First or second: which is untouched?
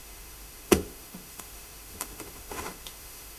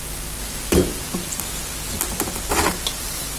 second